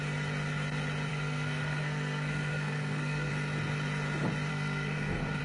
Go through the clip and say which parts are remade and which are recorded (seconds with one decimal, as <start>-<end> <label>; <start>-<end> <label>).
0.0-1.1 recorded; 1.1-3.3 remade; 3.3-4.5 recorded; 4.5-5.4 remade